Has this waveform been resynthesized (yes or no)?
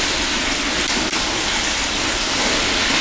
no